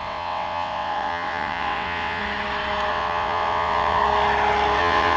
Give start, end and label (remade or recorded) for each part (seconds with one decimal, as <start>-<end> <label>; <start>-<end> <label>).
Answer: 0.0-2.2 remade; 2.2-2.9 recorded; 2.9-4.0 remade; 4.0-4.8 recorded; 4.8-5.2 remade